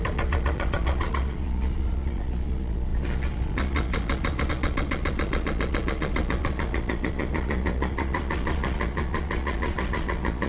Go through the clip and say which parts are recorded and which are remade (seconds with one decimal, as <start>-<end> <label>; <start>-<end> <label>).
0.0-10.5 remade